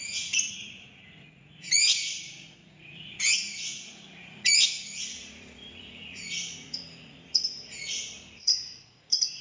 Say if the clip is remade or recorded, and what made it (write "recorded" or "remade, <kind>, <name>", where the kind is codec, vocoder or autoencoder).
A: remade, vocoder, Vocos